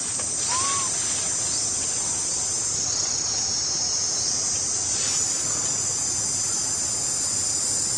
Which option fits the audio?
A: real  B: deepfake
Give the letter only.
A